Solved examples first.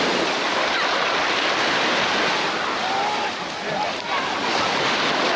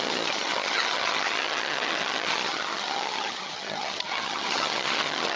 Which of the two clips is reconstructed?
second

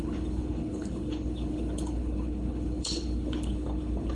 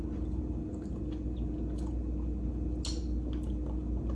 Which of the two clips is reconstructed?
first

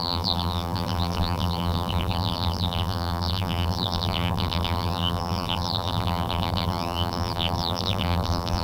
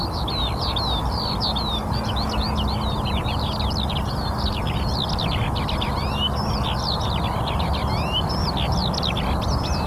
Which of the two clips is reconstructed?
first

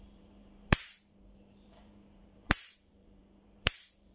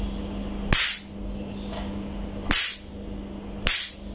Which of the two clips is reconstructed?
first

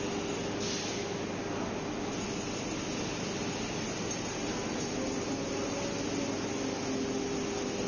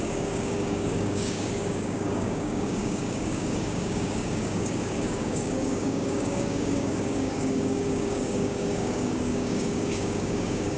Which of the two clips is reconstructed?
second